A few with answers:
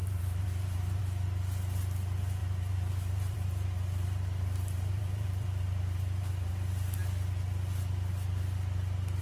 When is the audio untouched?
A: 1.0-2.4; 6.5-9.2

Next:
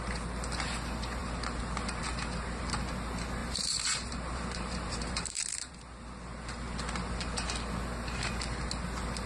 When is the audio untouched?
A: 0.0-3.4; 5.7-9.3

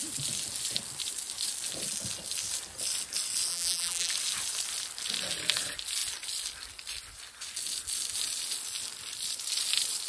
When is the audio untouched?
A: 0.0-3.5; 4.1-10.1

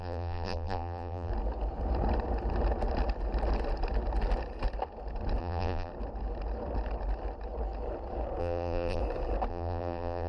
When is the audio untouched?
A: 1.3-5.4; 5.9-8.4; 9.0-9.5

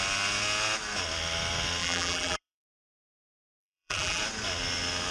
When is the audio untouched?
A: 0.0-1.8; 4.2-5.1